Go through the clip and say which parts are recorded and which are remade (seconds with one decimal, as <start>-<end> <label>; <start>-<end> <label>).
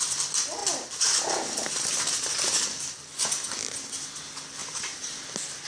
0.0-4.6 recorded; 4.6-5.2 remade; 5.2-5.7 recorded